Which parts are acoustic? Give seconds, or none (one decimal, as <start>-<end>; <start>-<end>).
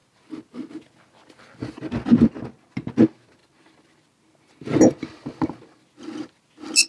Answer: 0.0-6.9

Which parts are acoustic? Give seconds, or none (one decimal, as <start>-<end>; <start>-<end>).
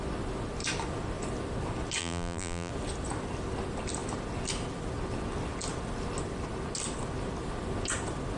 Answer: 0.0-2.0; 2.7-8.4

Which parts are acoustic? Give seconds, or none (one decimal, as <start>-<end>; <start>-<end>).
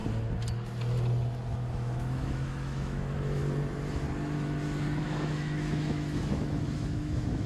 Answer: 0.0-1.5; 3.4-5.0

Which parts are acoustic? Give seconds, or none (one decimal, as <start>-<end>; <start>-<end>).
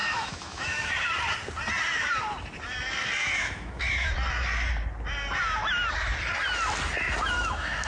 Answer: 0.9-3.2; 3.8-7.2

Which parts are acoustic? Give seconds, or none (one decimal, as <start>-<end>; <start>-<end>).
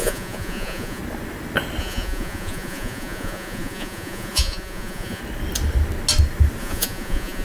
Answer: 1.0-1.8; 5.2-6.6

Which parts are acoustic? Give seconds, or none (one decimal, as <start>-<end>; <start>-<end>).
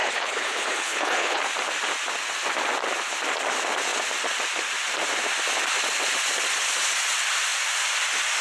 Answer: 1.4-8.4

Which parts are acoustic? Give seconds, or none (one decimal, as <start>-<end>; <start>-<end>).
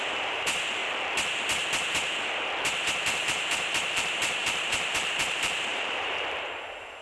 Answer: 0.8-3.0